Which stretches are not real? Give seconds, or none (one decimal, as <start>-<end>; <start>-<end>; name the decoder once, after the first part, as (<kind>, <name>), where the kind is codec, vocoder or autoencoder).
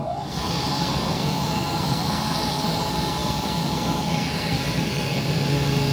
0.0-5.9 (codec, SNAC)